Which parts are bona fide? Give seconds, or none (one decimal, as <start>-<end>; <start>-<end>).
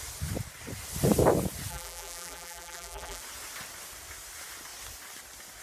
0.0-1.7; 3.2-5.6